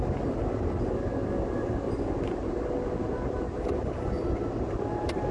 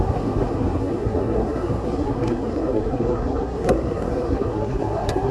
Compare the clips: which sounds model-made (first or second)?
second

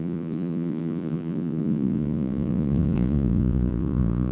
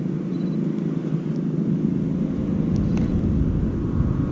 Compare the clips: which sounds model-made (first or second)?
first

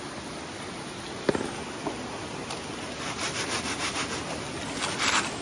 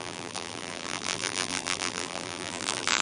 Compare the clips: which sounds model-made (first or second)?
second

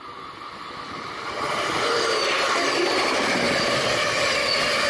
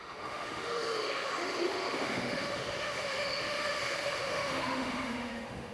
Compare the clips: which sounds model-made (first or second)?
second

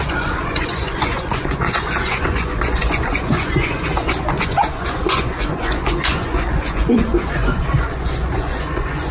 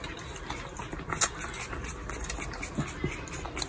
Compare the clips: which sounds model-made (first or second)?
first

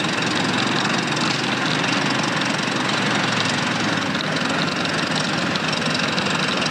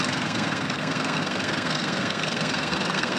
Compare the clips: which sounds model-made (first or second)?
second